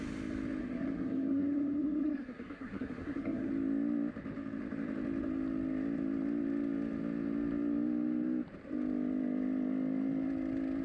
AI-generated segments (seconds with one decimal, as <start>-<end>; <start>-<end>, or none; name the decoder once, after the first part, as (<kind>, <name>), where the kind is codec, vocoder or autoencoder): 0.6-3.5 (codec, SNAC)